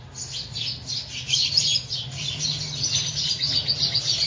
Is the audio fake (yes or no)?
no